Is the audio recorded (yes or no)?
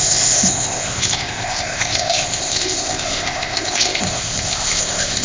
no